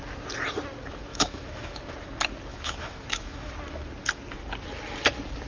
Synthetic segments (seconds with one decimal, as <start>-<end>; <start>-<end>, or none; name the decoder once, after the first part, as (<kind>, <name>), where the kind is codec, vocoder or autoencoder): 1.1-1.8 (autoencoder, DAC-VAE); 2.5-3.5